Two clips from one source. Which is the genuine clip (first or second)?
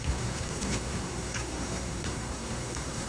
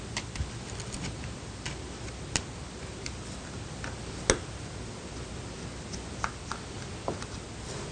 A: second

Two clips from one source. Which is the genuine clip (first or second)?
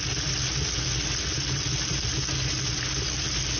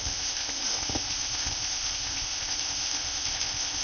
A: first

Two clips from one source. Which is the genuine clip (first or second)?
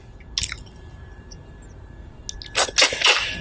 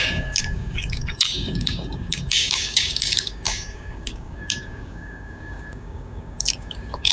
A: first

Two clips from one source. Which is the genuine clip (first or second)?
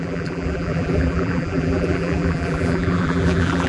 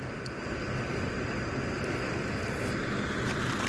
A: second